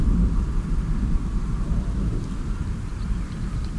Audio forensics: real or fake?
real